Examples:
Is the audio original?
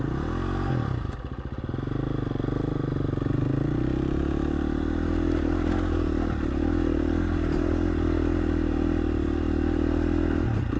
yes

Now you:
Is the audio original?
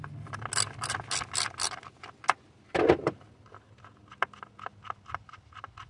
yes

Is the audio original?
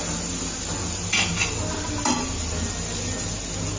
yes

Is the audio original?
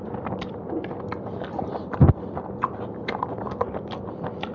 yes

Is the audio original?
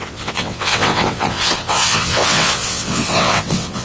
no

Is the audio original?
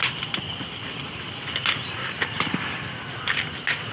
yes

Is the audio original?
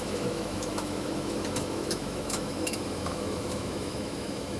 no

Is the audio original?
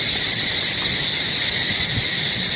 yes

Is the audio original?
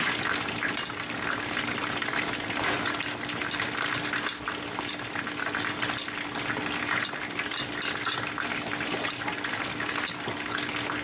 yes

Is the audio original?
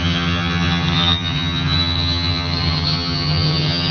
no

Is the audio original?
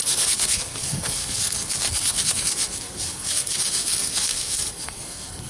no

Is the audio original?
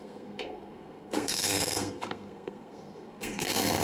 no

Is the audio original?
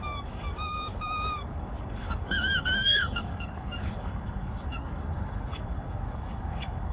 no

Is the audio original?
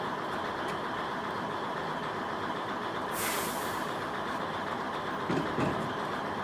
yes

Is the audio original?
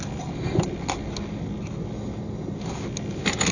yes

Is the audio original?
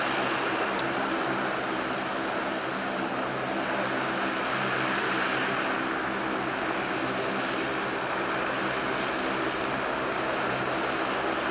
yes